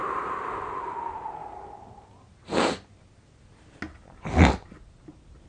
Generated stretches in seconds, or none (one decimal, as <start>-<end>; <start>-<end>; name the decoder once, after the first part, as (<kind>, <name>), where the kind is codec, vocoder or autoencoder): none